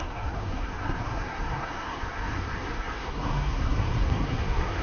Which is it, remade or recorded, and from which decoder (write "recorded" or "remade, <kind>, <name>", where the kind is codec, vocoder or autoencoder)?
remade, codec, SNAC